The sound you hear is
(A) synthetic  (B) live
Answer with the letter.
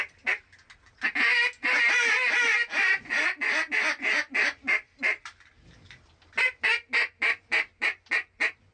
B